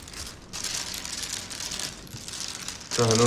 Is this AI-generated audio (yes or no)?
no